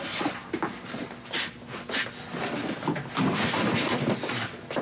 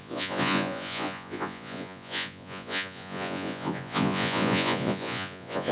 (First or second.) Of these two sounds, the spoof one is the second